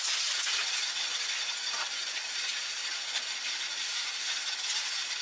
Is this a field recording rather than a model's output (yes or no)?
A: yes